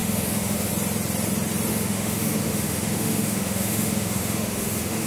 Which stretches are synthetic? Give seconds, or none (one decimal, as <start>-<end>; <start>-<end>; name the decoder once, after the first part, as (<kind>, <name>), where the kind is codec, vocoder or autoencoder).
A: 0.0-0.7 (autoencoder, DAC-VAE); 1.7-5.1